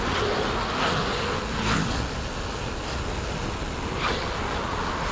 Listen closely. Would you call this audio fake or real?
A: real